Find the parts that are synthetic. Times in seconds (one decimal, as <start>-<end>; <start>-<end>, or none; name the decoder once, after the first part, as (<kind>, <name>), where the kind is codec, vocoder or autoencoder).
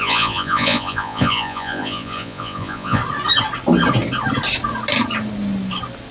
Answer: 0.0-3.0 (vocoder, Vocos)